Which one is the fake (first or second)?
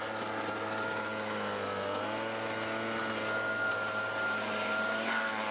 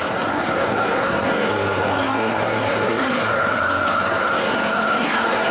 second